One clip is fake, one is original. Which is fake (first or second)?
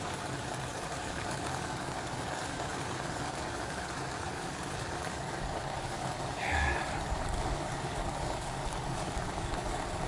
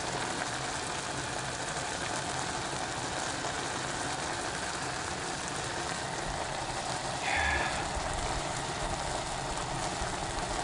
first